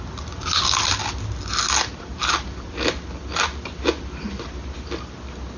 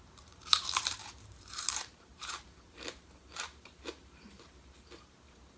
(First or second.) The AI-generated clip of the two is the second